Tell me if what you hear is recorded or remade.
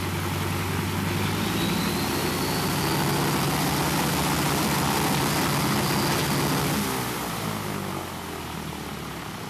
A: recorded